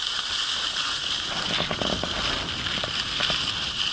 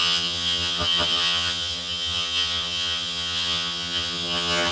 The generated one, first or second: second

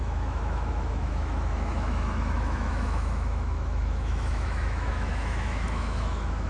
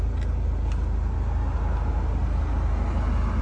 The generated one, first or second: first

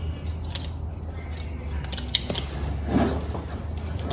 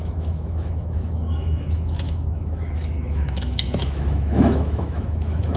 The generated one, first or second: second